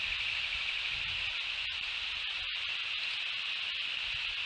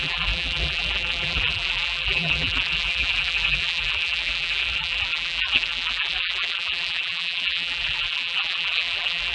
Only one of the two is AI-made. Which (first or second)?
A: second